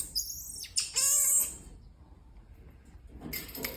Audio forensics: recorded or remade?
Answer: recorded